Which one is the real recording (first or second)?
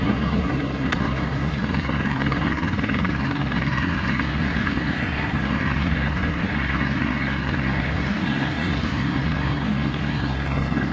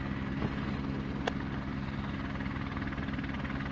second